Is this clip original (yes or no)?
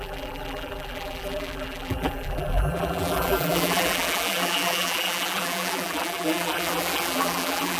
no